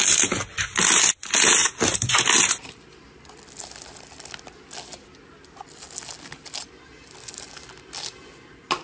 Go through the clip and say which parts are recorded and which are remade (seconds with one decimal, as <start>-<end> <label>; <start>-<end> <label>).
0.0-8.8 recorded